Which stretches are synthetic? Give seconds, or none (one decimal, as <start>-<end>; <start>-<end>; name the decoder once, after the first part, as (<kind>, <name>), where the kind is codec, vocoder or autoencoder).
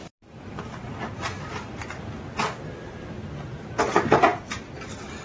0.0-0.5 (vocoder, BigVGAN v2)